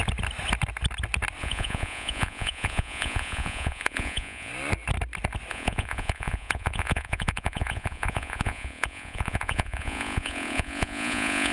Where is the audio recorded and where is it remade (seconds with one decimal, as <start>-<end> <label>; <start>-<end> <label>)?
0.0-1.4 recorded; 1.4-4.5 remade; 4.5-5.5 recorded; 5.5-11.5 remade